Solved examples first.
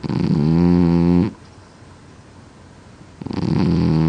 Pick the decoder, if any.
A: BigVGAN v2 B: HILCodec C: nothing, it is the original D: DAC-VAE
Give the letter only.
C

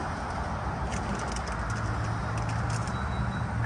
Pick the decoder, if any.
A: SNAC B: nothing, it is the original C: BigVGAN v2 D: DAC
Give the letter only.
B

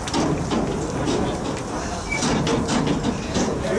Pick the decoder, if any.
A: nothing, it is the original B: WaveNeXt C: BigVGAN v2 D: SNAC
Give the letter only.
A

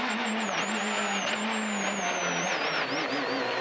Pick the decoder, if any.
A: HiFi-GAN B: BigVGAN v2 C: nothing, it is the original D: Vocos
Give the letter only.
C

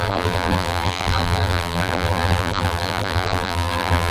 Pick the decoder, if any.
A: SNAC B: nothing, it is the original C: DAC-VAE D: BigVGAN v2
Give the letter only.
D